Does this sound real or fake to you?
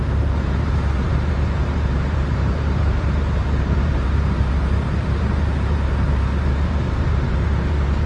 fake